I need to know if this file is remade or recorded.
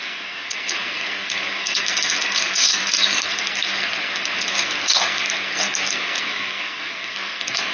remade